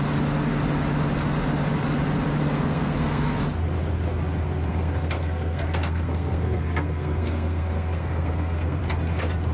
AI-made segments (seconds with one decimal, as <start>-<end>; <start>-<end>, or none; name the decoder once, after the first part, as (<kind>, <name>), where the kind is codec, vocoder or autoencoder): 2.4-3.4 (codec, SNAC); 4.7-8.8